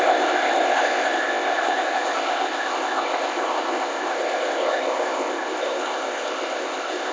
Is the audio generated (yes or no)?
yes